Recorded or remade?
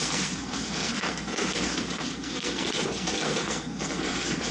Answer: remade